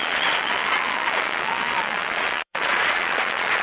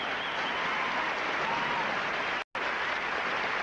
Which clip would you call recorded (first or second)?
second